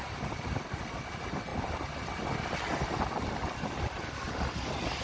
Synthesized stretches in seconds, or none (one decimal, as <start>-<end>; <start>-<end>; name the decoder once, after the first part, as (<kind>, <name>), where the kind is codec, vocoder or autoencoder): none